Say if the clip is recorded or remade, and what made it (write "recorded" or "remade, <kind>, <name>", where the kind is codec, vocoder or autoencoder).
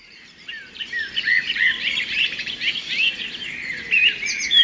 remade, vocoder, BigVGAN v2